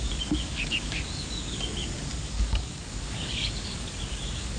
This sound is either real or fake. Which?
fake